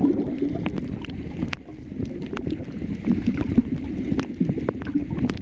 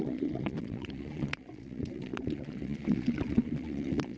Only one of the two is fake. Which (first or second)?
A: second